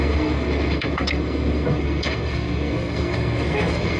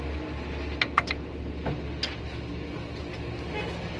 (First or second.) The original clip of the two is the second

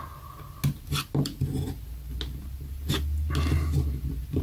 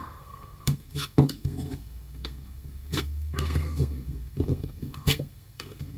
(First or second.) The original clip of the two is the first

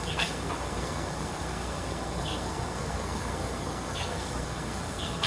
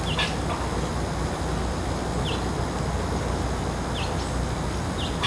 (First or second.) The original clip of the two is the second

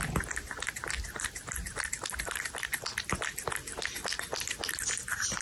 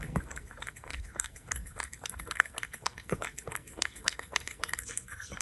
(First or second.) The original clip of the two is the first